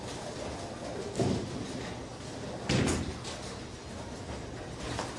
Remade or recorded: recorded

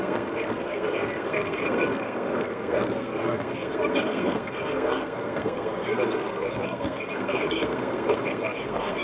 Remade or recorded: remade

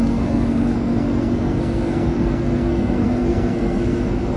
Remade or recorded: remade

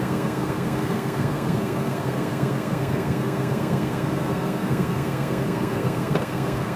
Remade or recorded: remade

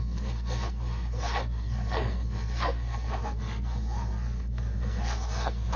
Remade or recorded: remade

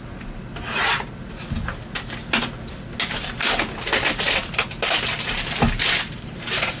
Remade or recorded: recorded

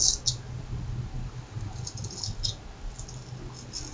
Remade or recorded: recorded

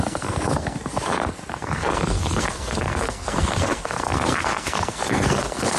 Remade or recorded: remade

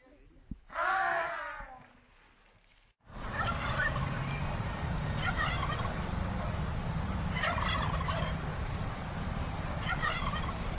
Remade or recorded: recorded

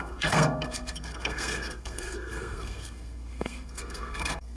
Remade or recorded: remade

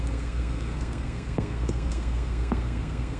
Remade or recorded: remade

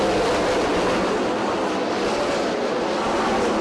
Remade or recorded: recorded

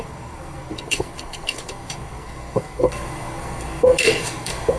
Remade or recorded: remade